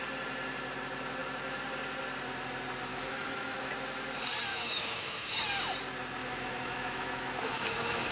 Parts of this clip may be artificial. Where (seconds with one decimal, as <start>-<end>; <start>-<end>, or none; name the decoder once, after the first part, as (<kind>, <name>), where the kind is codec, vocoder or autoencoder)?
2.9-3.7 (autoencoder, DAC-VAE); 4.5-5.4; 6.2-8.1